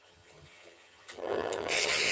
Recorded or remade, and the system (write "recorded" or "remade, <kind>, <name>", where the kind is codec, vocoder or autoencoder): remade, vocoder, HiFi-GAN